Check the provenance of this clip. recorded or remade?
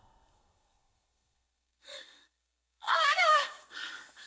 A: remade